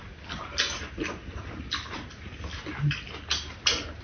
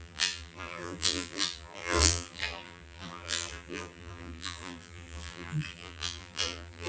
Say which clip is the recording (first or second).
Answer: first